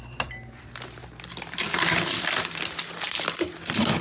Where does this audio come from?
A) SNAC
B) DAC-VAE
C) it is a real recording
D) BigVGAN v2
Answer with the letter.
D